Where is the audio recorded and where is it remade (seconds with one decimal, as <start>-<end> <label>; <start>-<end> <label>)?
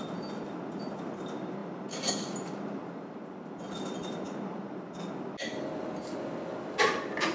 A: 0.0-7.3 recorded